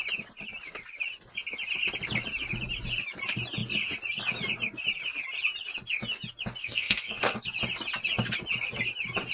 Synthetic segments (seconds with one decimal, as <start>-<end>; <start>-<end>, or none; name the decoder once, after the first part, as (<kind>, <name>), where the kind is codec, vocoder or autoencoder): 6.6-7.4 (codec, SNAC)